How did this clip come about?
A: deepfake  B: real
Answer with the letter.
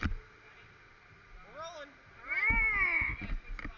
B